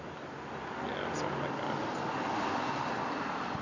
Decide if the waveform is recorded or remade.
recorded